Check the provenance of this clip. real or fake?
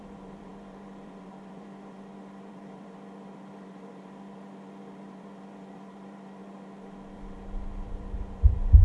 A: fake